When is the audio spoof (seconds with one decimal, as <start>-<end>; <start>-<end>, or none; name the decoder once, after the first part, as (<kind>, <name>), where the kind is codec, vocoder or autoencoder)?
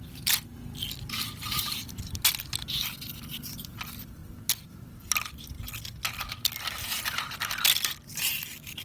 3.3-3.8 (vocoder, BigVGAN v2)